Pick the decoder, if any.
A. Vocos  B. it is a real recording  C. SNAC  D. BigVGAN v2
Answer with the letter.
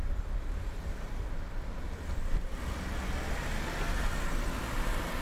B